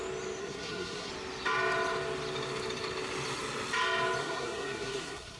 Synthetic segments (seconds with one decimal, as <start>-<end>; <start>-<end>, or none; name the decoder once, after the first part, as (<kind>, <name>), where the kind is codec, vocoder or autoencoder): 0.4-1.1 (codec, SNAC); 4.2-5.4